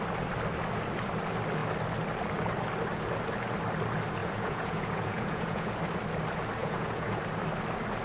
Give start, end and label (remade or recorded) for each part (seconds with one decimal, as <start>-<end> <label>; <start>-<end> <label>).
0.0-4.2 recorded; 4.2-5.7 remade; 5.7-6.6 recorded; 6.6-7.2 remade; 7.2-8.0 recorded